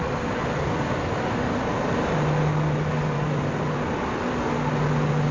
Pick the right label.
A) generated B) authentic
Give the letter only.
B